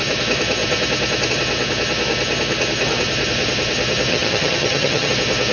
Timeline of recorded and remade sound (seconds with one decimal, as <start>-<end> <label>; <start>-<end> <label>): 0.0-4.1 recorded; 4.1-5.1 remade; 5.1-5.5 recorded